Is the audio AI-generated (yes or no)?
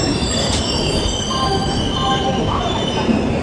yes